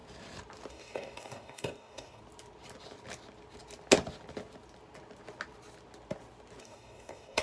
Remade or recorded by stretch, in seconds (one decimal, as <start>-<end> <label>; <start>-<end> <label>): 0.0-0.7 recorded; 0.7-2.2 remade; 2.2-6.6 recorded; 6.6-7.4 remade